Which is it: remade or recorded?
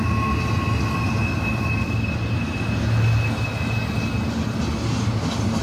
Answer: recorded